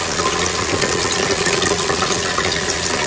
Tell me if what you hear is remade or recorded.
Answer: remade